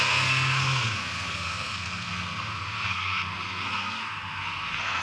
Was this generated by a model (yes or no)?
yes